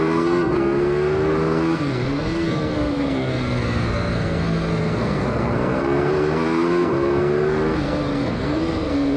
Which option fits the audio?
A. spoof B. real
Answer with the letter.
A